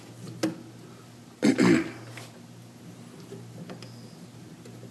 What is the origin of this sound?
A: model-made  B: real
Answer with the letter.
B